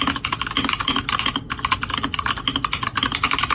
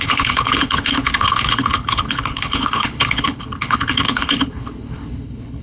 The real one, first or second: first